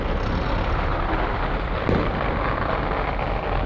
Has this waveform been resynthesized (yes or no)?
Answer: no